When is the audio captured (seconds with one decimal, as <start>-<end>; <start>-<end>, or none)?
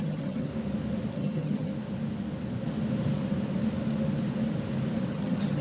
0.5-1.1; 1.7-5.1